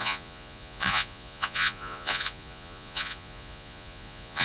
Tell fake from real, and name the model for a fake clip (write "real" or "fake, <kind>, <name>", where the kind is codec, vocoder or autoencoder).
fake, vocoder, Vocos